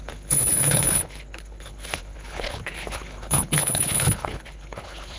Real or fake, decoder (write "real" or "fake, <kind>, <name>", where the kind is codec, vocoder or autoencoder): fake, codec, HILCodec